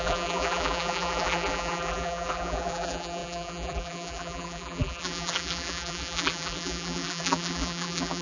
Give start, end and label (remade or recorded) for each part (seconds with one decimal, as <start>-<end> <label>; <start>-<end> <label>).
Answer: 0.0-8.2 remade